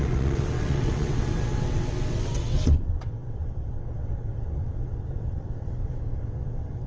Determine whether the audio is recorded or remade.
remade